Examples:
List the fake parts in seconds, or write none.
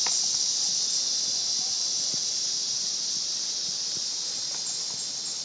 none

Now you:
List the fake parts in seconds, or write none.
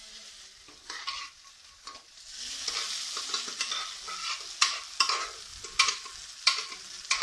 none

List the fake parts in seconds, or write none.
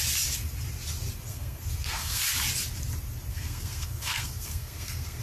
1.3-2.2; 3.3-5.2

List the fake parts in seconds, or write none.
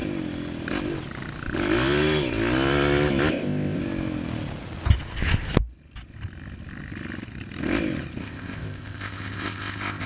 3.3-3.8; 8.2-10.1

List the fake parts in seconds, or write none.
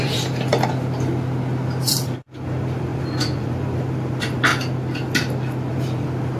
0.0-0.5; 1.9-4.5; 5.7-6.4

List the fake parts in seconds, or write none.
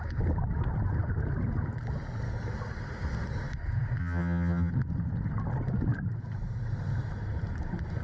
4.0-4.7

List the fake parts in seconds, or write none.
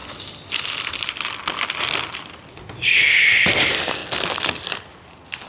0.0-3.3